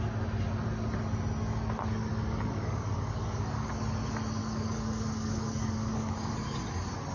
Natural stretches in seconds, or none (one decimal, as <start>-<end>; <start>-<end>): 0.0-2.1; 3.7-4.4; 6.3-7.1